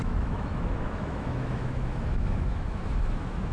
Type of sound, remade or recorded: remade